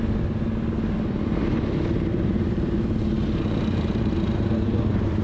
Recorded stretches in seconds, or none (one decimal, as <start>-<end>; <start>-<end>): 0.0-2.1